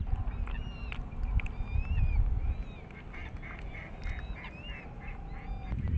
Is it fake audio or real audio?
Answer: real